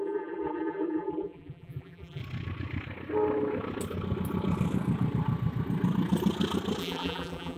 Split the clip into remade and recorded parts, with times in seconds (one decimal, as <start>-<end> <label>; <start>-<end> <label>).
0.0-2.2 remade; 2.2-6.8 recorded; 6.8-7.6 remade